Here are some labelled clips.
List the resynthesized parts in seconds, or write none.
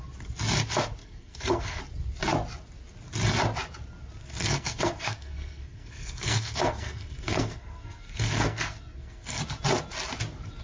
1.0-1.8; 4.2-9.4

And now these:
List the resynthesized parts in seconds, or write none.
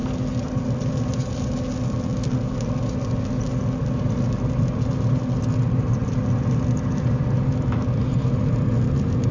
none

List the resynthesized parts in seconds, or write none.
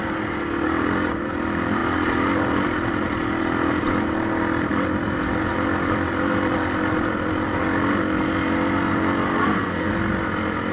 9.4-9.9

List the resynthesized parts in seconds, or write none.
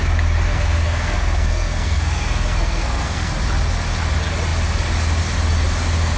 0.5-3.3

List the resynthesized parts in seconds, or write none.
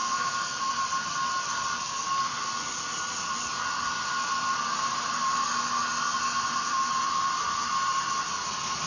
0.0-0.6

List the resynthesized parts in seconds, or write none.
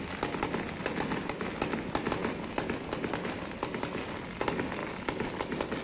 none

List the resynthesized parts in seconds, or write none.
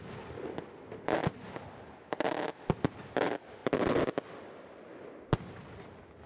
none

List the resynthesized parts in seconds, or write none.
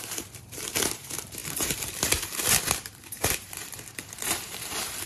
0.0-5.1